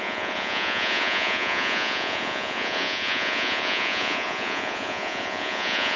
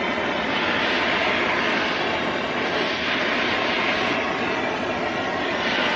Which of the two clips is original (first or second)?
second